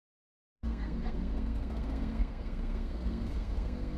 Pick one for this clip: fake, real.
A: fake